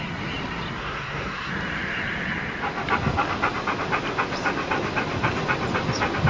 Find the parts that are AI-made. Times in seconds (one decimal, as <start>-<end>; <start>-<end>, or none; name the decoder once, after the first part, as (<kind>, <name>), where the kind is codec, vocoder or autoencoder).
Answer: 0.8-1.5 (codec, SNAC)